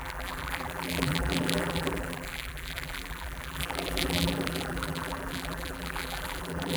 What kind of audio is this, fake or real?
fake